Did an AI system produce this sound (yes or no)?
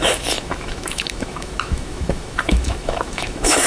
yes